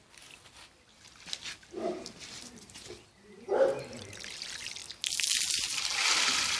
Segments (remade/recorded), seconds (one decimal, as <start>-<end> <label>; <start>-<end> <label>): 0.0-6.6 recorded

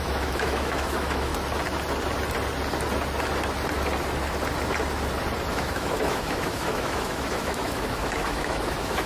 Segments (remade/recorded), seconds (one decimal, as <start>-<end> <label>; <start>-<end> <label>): 0.0-1.3 remade; 1.3-5.5 recorded; 5.5-9.1 remade

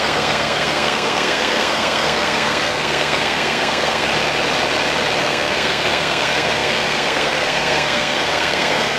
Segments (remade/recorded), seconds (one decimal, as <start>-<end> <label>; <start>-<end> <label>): 0.0-4.1 remade; 4.1-5.2 recorded; 5.2-9.0 remade